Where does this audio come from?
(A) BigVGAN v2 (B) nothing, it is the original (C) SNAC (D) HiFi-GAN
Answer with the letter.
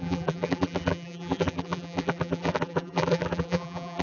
A